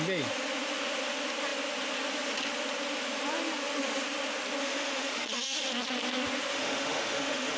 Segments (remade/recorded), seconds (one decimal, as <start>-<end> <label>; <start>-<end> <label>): 0.0-4.6 recorded; 4.6-5.6 remade; 5.6-6.5 recorded; 6.5-7.6 remade